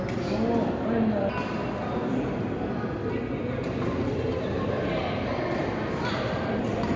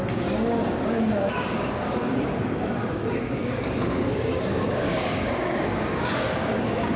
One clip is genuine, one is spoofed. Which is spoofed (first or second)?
second